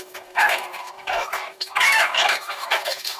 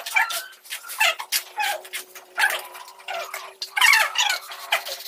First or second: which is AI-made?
first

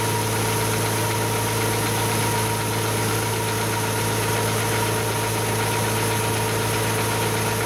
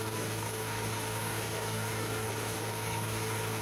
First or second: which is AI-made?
second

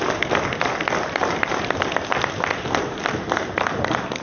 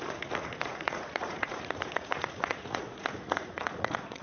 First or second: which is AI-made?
second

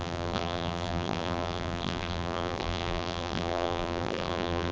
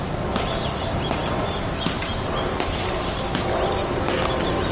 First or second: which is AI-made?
first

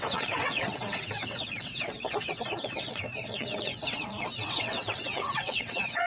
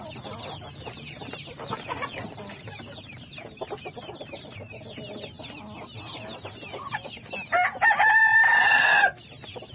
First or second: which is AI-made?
first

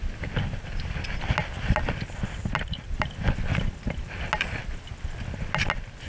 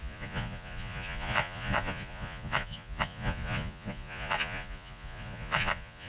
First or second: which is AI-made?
second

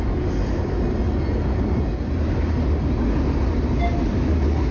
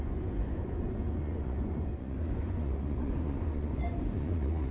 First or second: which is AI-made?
second